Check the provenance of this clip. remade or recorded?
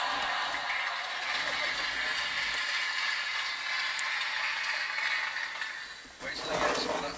recorded